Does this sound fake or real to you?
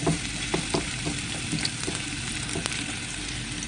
real